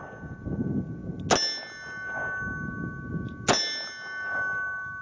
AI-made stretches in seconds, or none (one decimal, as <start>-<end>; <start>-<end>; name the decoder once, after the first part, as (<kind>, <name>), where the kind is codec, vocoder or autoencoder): none